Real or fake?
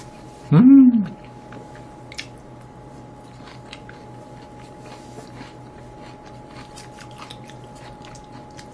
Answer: real